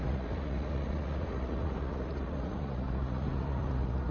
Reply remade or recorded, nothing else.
remade